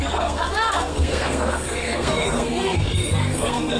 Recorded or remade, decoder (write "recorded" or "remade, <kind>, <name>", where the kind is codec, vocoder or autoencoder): remade, codec, SNAC